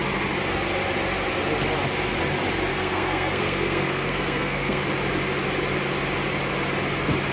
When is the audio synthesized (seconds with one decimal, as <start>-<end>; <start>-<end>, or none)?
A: 2.7-4.8